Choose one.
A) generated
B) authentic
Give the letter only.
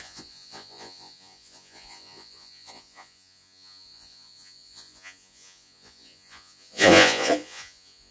A